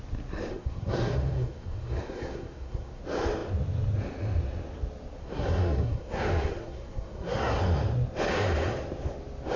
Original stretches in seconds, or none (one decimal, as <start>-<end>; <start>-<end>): 0.0-0.5; 3.0-5.2; 7.6-9.6